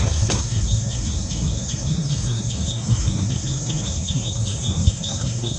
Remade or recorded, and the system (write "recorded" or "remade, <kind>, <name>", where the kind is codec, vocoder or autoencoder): remade, codec, SNAC